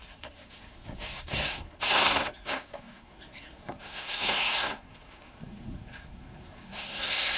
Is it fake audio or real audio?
fake